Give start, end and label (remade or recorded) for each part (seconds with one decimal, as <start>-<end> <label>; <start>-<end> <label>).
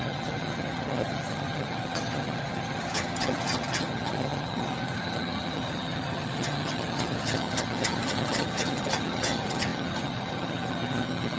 0.0-11.4 remade